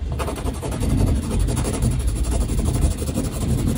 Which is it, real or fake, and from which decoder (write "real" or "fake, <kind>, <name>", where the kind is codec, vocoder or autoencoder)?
real